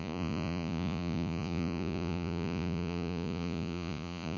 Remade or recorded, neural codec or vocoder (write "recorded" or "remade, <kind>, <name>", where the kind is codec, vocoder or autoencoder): remade, vocoder, Vocos